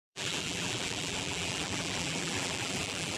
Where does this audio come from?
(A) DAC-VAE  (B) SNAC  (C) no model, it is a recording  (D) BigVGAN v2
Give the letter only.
D